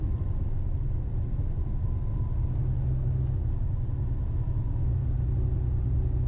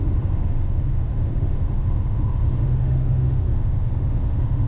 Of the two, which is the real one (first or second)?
first